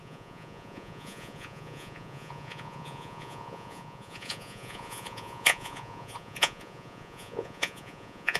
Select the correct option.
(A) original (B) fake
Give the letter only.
B